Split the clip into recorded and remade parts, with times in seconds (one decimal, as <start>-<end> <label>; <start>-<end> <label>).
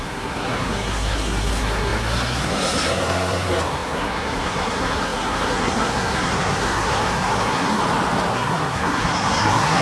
0.0-7.8 remade; 7.8-8.3 recorded; 8.3-9.8 remade